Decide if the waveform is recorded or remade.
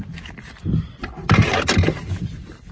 recorded